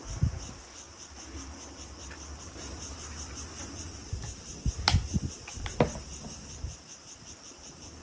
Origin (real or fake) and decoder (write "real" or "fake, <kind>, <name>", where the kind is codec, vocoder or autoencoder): real